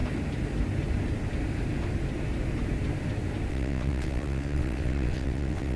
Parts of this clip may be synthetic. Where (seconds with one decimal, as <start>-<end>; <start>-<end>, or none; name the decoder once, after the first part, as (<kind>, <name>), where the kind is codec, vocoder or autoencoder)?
3.5-5.8 (vocoder, WaveNeXt)